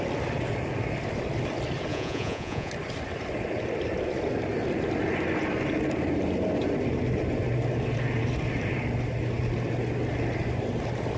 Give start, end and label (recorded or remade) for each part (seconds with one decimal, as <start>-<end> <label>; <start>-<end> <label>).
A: 0.0-1.9 recorded; 1.9-2.7 remade; 2.7-11.2 recorded